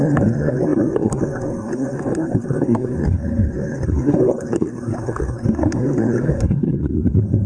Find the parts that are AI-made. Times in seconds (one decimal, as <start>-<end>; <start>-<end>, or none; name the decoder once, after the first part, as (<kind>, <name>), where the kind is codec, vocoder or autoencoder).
0.0-7.5 (codec, SNAC)